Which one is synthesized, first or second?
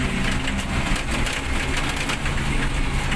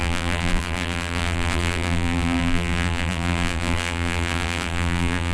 second